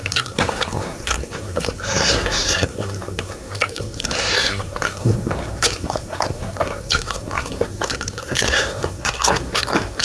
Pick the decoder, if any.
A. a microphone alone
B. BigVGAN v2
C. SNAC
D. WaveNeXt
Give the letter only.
C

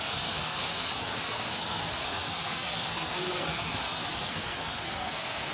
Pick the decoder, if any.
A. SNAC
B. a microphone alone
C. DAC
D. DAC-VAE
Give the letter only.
A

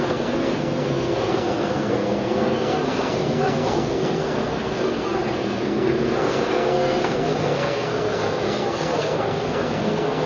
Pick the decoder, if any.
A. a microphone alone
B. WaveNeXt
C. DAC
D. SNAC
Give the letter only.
D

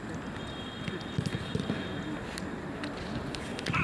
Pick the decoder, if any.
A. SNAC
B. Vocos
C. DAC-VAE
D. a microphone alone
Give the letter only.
D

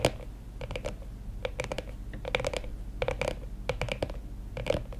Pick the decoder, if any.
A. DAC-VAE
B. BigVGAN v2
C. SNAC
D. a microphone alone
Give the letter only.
D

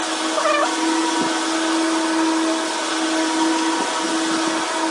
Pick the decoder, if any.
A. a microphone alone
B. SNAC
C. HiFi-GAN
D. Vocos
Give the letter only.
A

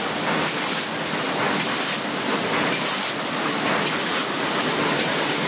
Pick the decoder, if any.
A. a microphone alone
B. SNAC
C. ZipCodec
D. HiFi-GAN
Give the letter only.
A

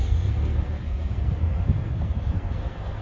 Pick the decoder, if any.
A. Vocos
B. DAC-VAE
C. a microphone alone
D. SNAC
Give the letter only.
D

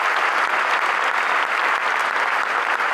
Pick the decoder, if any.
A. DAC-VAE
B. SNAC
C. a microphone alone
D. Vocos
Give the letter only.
C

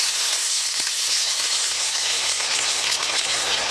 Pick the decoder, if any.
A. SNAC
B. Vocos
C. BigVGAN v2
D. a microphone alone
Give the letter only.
A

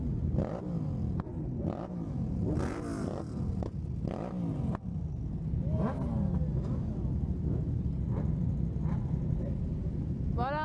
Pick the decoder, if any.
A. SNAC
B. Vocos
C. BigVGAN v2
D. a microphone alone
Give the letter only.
D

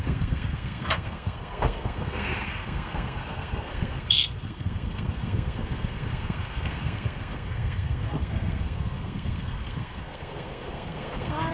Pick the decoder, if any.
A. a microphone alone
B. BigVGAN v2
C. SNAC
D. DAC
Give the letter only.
C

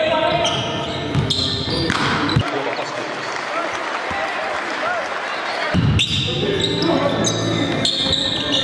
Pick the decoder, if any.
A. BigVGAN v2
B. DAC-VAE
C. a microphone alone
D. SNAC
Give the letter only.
C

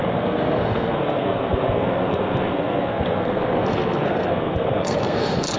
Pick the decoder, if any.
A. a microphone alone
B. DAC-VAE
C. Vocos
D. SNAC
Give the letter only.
D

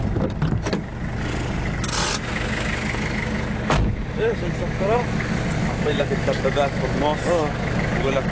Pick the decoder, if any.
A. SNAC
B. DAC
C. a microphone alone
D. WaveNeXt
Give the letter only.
C